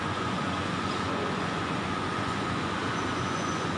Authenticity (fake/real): fake